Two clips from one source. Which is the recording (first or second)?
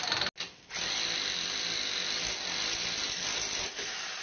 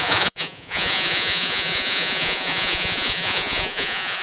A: first